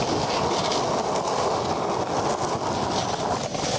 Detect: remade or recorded recorded